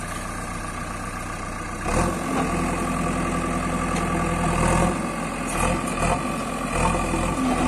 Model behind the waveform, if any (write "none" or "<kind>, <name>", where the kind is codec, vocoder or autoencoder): none